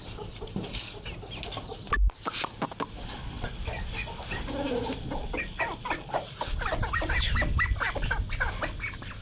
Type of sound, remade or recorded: recorded